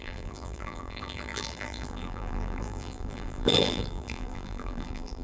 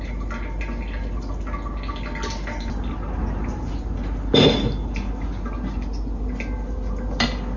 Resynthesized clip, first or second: first